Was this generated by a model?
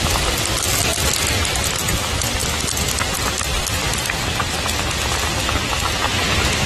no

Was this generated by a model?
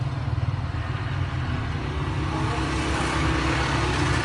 no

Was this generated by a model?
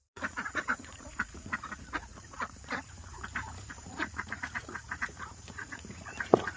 yes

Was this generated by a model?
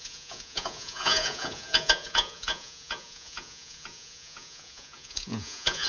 yes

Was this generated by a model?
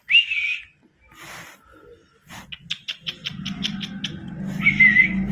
no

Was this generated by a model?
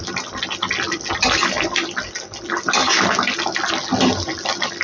no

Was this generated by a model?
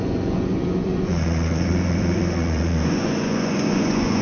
yes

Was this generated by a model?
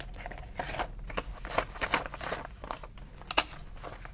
no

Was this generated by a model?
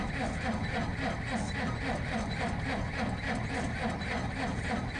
no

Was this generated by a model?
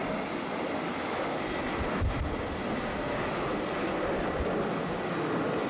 no